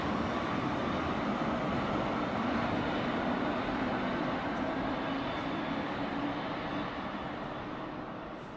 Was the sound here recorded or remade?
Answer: recorded